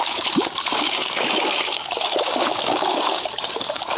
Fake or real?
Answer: fake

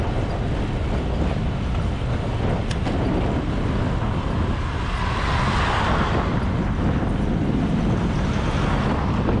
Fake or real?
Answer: real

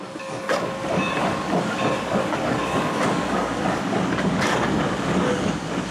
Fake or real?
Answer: fake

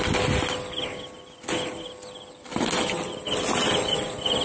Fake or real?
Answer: real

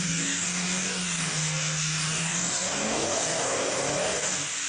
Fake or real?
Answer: fake